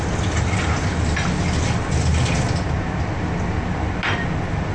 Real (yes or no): yes